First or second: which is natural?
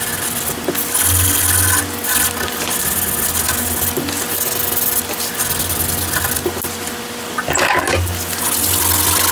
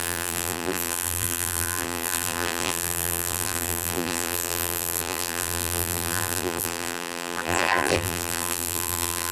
first